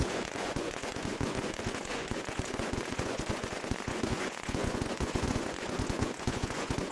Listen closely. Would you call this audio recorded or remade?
remade